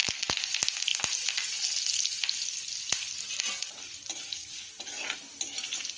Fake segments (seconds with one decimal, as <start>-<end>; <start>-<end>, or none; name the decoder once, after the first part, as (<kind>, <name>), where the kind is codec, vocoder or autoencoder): none